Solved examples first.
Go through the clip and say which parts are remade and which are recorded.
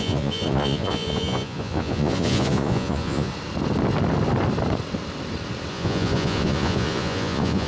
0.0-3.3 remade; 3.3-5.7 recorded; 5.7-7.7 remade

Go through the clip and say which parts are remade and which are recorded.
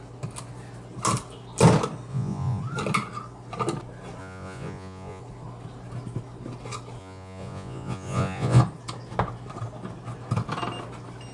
0.0-2.1 recorded; 2.1-2.6 remade; 2.6-4.2 recorded; 4.2-5.2 remade; 5.2-7.0 recorded; 7.0-8.6 remade; 8.6-11.3 recorded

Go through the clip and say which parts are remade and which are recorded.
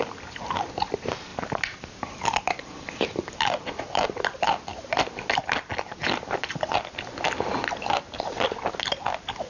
0.0-9.5 recorded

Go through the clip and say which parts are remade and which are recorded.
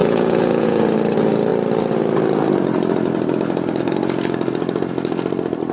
0.0-0.8 remade; 0.8-5.7 recorded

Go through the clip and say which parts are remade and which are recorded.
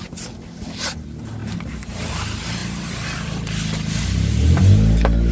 0.0-5.3 recorded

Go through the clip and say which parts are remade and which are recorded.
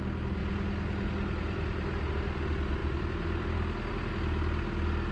0.0-5.1 recorded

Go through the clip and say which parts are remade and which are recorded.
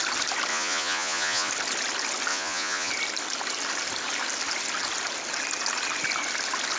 0.0-0.5 recorded; 0.5-1.5 remade; 1.5-2.3 recorded; 2.3-2.9 remade; 2.9-6.8 recorded